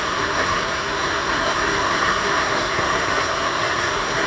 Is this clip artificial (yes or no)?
yes